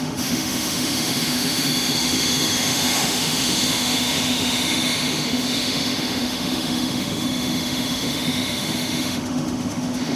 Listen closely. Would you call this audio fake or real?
fake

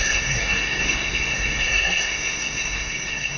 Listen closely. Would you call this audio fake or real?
fake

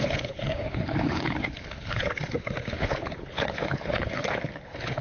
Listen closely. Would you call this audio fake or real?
fake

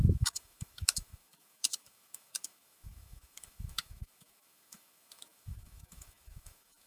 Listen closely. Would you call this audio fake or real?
fake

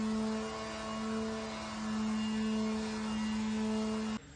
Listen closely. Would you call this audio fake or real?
real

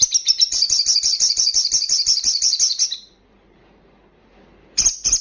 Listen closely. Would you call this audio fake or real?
real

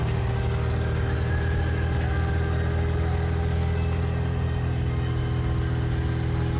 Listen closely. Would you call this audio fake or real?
real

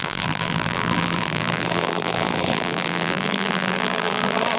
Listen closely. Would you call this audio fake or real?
fake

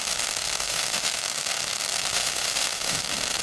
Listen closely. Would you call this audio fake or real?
fake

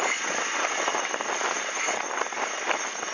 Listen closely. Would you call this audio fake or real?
real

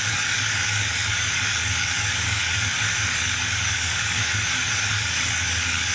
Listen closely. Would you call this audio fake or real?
fake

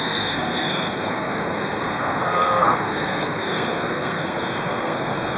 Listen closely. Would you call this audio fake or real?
fake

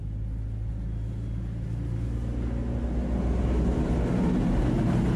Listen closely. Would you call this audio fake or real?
real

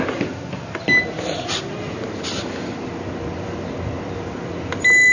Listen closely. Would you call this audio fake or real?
real